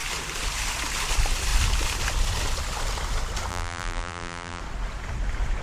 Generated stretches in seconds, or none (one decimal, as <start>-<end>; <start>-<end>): 3.5-4.6